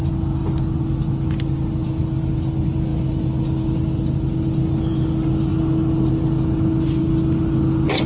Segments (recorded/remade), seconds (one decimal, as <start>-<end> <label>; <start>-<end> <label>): 0.0-8.1 recorded